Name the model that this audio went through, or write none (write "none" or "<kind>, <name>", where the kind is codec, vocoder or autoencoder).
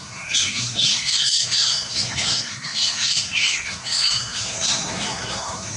codec, SNAC